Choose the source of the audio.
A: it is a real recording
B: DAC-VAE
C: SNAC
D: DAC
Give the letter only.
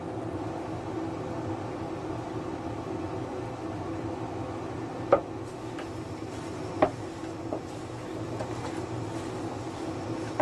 A